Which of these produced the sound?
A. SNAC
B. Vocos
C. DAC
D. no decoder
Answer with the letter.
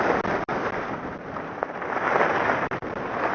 D